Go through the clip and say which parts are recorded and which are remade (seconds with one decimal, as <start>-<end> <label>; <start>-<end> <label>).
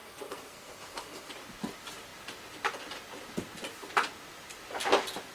0.0-1.3 remade; 1.3-5.3 recorded